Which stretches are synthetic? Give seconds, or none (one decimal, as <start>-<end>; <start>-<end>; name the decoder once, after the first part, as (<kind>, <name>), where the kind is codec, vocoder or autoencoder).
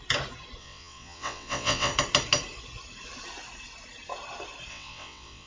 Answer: 0.6-1.9 (vocoder, WaveNeXt); 4.7-5.5